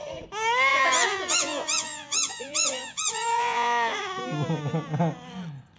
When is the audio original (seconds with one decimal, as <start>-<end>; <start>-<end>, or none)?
0.0-0.7; 4.2-5.8